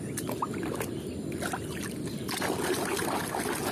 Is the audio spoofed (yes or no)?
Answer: no